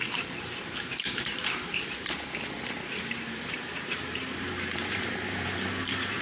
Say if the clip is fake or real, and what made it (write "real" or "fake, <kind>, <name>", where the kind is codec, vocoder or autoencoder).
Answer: fake, vocoder, BigVGAN v2